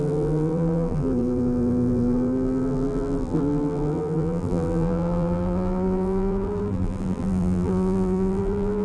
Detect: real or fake fake